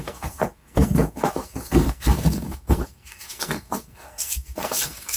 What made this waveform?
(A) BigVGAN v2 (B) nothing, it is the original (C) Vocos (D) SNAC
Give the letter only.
D